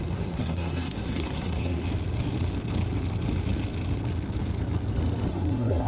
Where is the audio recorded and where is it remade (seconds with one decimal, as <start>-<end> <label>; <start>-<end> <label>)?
0.0-1.8 remade; 1.8-5.3 recorded; 5.3-5.9 remade